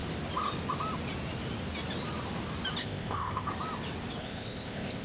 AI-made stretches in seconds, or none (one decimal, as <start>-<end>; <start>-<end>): 2.8-3.5; 4.2-5.0